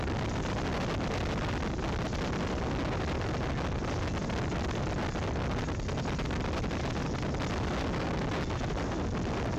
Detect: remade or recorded recorded